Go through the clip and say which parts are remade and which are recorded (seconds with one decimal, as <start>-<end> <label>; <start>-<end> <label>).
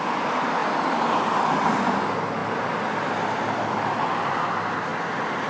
0.0-5.5 recorded